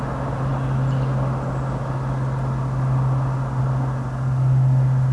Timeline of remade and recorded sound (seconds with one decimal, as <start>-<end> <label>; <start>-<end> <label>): 0.0-5.1 recorded

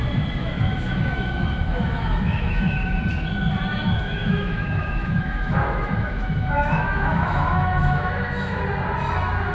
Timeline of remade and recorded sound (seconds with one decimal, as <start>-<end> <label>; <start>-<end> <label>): 0.0-0.4 recorded; 0.4-3.0 remade; 3.0-3.7 recorded; 3.7-8.6 remade; 8.6-9.5 recorded

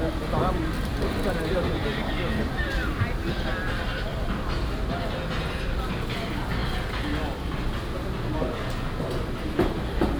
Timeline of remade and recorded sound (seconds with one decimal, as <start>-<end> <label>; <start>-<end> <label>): 0.0-1.9 recorded; 1.9-3.3 remade; 3.3-10.2 recorded